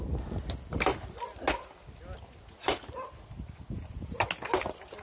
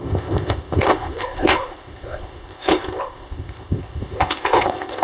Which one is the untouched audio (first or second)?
first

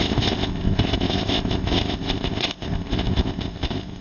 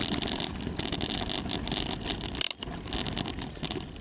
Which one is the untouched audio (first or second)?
second